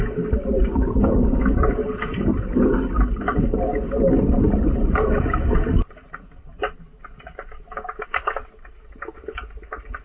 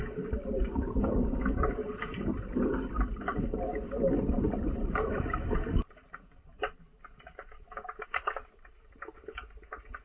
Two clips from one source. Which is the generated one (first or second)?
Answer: second